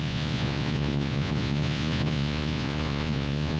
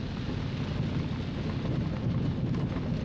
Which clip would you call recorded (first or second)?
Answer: second